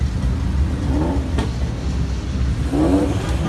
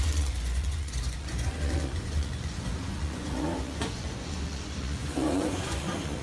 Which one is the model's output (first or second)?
second